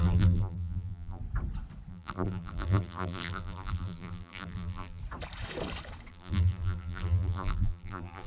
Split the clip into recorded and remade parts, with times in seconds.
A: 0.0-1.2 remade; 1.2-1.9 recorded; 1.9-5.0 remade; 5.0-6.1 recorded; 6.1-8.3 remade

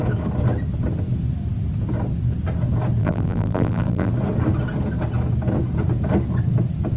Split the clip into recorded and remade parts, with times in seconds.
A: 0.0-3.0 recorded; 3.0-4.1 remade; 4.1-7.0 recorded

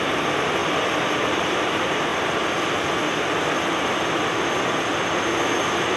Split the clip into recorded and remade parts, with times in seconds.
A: 0.0-0.6 remade; 0.6-1.2 recorded; 1.2-2.1 remade; 2.1-6.0 recorded

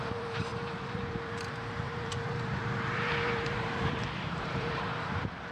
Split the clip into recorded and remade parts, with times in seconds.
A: 0.0-5.5 remade

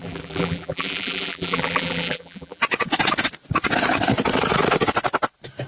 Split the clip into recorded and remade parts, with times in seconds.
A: 0.0-2.6 remade; 2.6-5.7 recorded

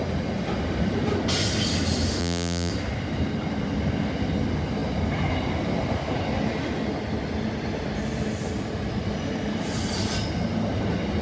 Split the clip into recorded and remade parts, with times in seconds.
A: 0.0-2.2 recorded; 2.2-2.7 remade; 2.7-11.2 recorded

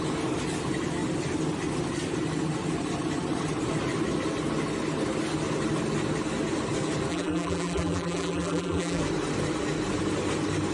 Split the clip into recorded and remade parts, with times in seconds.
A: 0.0-7.1 recorded; 7.1-9.0 remade; 9.0-10.7 recorded